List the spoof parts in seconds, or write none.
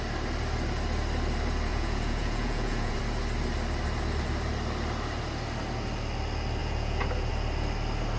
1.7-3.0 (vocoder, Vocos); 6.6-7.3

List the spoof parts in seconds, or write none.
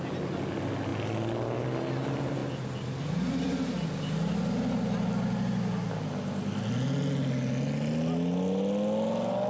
none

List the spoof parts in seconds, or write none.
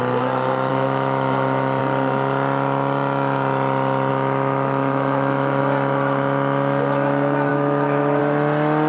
0.7-1.8 (autoencoder, DAC-VAE); 4.1-5.6; 7.5-8.2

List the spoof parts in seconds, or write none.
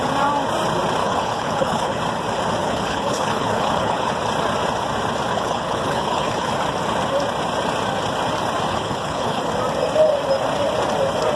1.0-2.0 (codec, HILCodec); 2.6-4.1; 5.3-6.5; 8.7-9.4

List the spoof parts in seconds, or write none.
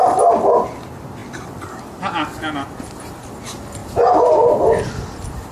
none